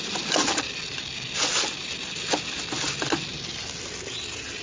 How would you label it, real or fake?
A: real